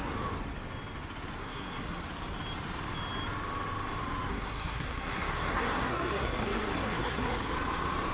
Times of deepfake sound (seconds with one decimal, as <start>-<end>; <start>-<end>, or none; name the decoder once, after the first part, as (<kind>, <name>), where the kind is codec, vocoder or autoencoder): 1.4-2.0 (codec, SNAC); 4.3-7.5